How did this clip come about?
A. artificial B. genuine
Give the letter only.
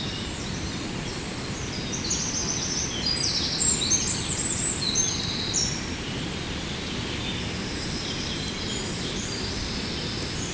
A